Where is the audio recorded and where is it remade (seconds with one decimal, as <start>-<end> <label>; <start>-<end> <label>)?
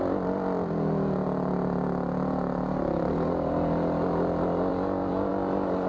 0.0-5.9 recorded